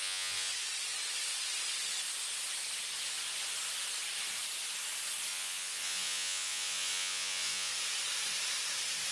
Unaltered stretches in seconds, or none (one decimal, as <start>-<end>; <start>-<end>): 0.5-5.3; 7.7-9.1